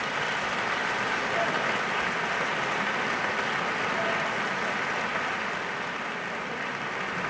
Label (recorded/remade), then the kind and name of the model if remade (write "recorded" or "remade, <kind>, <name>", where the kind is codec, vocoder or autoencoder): recorded